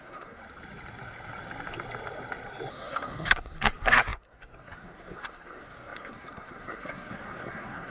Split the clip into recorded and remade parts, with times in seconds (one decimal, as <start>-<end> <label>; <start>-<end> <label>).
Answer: 0.0-0.4 remade; 0.4-2.7 recorded; 2.7-7.9 remade

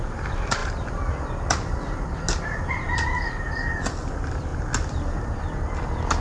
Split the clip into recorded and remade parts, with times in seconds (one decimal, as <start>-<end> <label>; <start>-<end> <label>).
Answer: 0.0-6.2 recorded

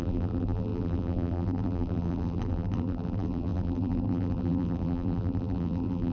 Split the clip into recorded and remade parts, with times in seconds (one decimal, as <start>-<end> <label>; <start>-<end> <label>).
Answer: 0.0-6.1 remade

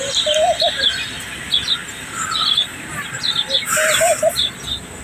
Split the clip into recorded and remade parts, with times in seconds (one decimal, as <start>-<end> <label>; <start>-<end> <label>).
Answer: 0.0-5.0 recorded

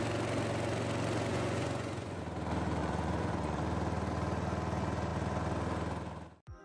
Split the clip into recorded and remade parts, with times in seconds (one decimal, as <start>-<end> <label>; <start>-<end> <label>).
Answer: 0.0-1.3 recorded; 1.3-2.2 remade; 2.2-2.8 recorded; 2.8-3.6 remade; 3.6-6.6 recorded

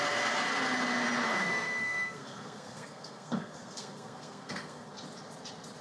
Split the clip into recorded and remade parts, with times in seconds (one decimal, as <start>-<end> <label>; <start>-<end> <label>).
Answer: 0.0-1.4 recorded; 1.4-4.9 remade; 4.9-5.8 recorded

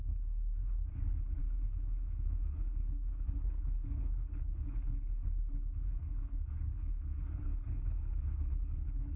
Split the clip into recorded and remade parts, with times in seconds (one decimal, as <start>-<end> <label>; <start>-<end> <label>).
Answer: 0.0-9.2 remade